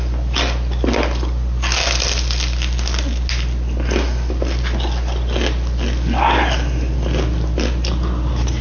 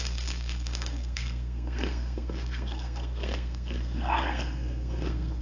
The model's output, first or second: second